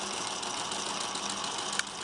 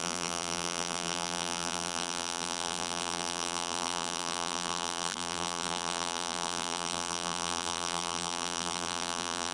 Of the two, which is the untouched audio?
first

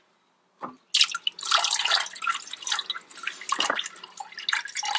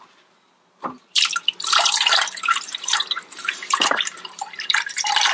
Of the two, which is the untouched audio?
first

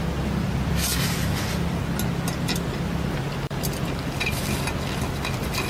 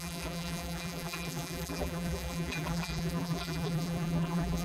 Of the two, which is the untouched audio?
first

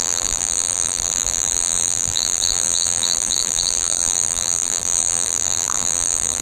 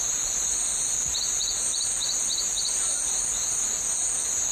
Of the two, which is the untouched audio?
second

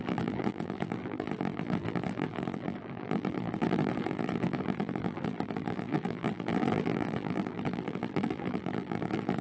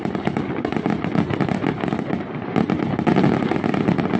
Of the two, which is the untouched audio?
second